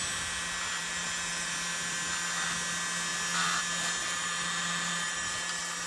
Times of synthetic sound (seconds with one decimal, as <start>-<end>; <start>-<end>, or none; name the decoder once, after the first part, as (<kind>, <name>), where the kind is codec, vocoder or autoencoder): 0.8-1.5 (vocoder, BigVGAN v2); 4.0-5.9

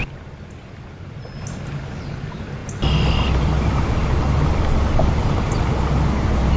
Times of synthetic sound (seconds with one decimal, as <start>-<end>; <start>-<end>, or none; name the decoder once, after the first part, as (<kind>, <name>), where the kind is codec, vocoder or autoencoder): none

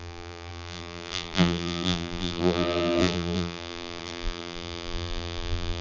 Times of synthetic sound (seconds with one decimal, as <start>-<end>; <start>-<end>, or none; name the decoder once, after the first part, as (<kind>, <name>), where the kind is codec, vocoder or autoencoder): 0.0-5.8 (vocoder, BigVGAN v2)

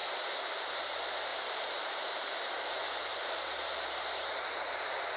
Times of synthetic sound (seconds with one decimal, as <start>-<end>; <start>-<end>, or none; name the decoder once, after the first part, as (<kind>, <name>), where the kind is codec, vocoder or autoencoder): 1.3-2.5 (vocoder, BigVGAN v2); 3.1-5.2

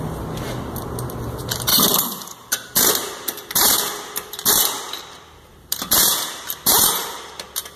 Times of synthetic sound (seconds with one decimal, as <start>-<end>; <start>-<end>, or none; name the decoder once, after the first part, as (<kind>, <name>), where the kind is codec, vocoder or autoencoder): 1.7-4.5 (vocoder, BigVGAN v2); 5.5-7.8